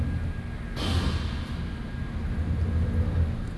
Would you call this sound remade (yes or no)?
no